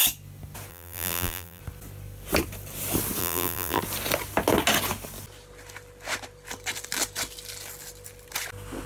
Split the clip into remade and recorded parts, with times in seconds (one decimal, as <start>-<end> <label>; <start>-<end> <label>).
0.0-0.7 recorded; 0.7-1.6 remade; 1.6-3.2 recorded; 3.2-3.8 remade; 3.8-8.9 recorded